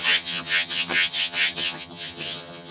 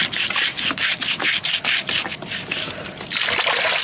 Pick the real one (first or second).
second